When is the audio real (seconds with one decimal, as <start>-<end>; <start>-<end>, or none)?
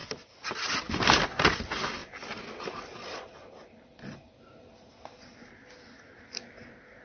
0.0-7.0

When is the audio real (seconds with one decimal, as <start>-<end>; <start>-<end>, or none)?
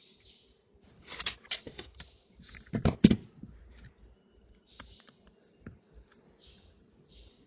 0.0-1.7; 2.6-3.2; 5.9-7.5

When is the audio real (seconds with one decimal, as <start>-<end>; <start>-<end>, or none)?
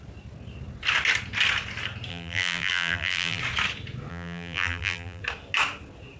0.0-2.1; 3.4-4.1; 5.2-6.2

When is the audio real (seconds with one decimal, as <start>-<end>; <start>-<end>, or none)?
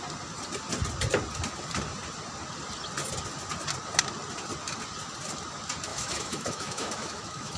0.0-5.9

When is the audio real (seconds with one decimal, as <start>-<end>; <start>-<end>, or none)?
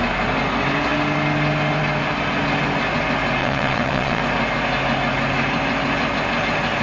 0.0-3.4; 4.2-6.8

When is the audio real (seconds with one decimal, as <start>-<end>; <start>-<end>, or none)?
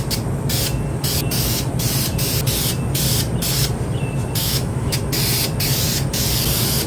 0.0-4.4; 5.0-6.9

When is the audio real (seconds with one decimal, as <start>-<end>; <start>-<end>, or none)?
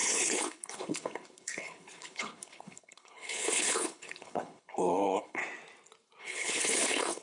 5.4-6.2